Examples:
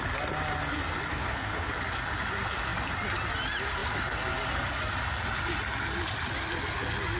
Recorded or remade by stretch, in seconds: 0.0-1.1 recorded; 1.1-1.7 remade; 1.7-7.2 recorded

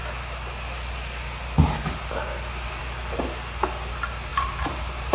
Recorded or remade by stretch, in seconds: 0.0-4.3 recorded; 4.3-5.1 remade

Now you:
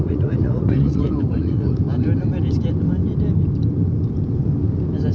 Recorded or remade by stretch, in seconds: 0.0-1.8 remade; 1.8-5.1 recorded